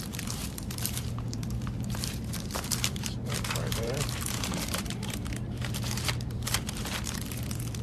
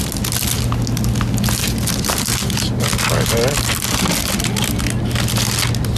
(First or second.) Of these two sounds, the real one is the second